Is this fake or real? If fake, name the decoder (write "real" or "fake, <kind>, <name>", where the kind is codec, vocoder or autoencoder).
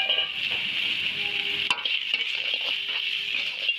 real